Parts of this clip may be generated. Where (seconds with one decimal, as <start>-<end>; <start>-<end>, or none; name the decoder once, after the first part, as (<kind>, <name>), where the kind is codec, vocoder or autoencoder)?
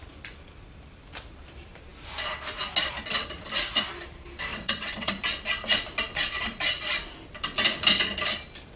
4.5-5.1 (vocoder, WaveNeXt)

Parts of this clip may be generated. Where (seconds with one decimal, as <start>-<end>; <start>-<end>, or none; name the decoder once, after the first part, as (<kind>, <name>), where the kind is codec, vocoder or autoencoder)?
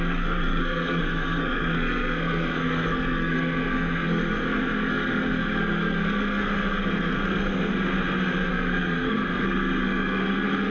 0.0-7.7 (codec, SNAC); 8.5-10.7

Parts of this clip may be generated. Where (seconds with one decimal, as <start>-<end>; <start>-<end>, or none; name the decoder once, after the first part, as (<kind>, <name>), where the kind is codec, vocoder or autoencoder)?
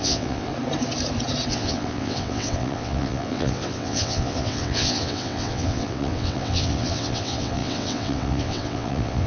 0.0-0.5 (vocoder, WaveNeXt); 1.5-9.3